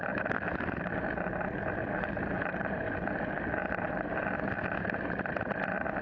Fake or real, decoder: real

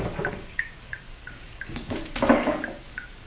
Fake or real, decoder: fake, codec, DAC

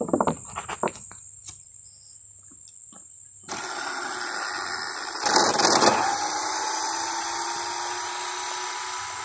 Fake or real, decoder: real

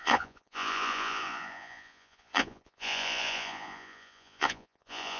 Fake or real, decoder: fake, vocoder, Vocos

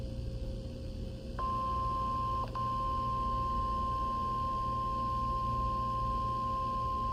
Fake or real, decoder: real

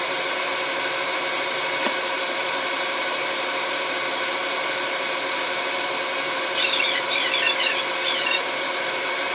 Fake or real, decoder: fake, vocoder, BigVGAN v2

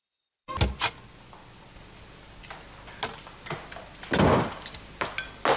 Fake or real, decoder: real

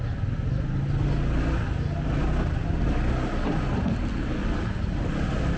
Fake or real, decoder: real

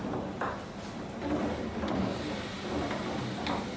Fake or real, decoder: real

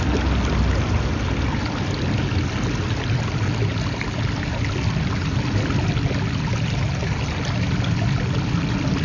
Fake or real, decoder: real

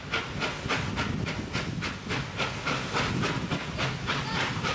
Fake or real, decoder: real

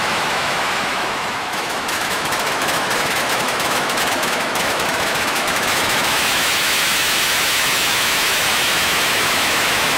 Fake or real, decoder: fake, autoencoder, DAC-VAE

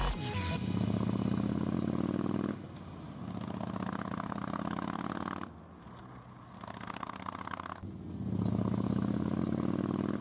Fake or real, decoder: real